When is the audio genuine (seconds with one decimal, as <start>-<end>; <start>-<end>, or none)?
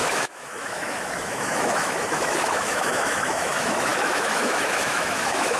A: none